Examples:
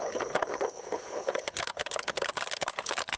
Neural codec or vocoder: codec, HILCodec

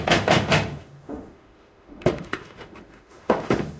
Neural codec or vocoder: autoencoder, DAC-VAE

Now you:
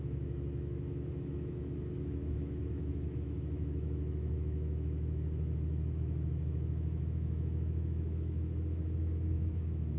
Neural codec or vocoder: autoencoder, DAC-VAE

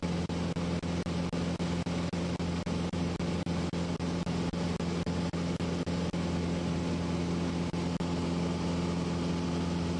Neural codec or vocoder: none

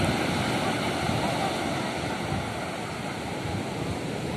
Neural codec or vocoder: none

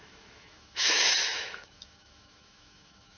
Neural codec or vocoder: autoencoder, DAC-VAE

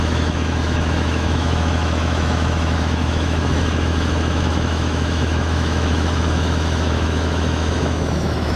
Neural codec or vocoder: autoencoder, DAC-VAE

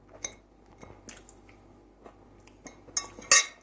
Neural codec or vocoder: none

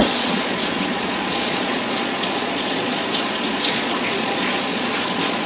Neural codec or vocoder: vocoder, Vocos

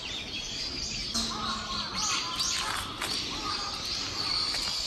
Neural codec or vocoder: none